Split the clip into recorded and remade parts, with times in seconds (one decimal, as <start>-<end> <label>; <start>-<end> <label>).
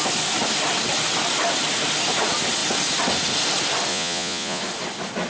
0.0-3.9 recorded; 3.9-4.6 remade; 4.6-5.3 recorded